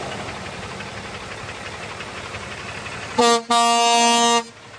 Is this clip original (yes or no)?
yes